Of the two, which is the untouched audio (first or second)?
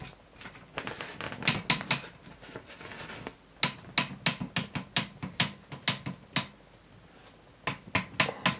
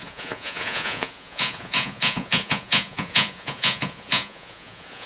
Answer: first